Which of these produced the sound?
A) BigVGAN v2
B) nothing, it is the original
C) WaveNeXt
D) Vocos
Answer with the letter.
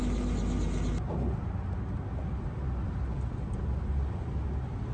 B